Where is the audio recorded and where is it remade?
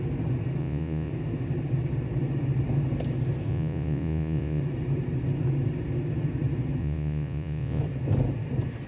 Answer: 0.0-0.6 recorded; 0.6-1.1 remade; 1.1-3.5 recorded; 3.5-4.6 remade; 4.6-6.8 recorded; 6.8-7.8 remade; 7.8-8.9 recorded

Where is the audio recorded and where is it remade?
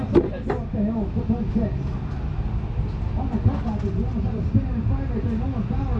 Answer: 0.0-0.7 recorded; 0.7-1.2 remade; 1.2-6.0 recorded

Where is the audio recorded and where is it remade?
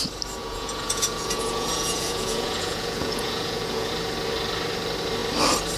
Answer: 0.0-0.4 recorded; 0.4-3.9 remade; 3.9-5.8 recorded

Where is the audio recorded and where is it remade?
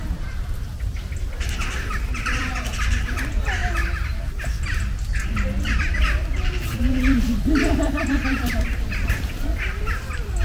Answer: 0.0-3.6 remade; 3.6-6.8 recorded; 6.8-10.4 remade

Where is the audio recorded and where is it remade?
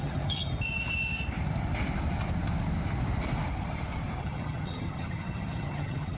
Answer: 0.0-0.5 remade; 0.5-4.2 recorded; 4.2-6.2 remade